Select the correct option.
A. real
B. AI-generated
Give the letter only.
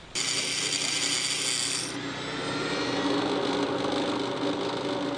A